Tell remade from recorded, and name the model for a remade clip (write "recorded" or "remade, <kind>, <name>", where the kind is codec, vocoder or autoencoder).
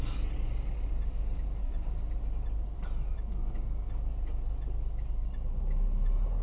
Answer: recorded